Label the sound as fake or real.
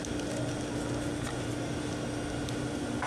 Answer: real